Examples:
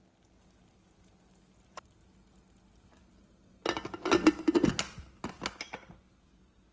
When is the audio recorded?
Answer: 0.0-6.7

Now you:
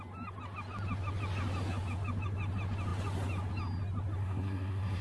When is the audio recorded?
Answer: 0.0-4.2

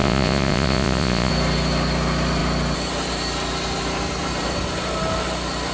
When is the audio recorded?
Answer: 1.3-5.7

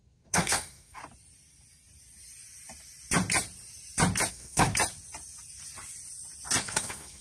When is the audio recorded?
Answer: 1.0-4.3; 4.7-6.6

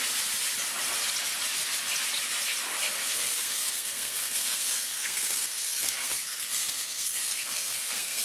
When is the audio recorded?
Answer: 0.0-3.0

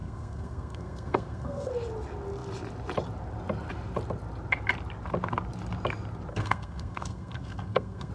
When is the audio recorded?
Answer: 1.7-6.3

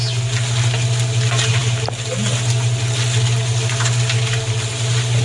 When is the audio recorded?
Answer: 0.0-5.2

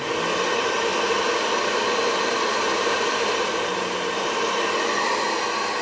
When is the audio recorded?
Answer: 0.0-0.9; 4.4-5.8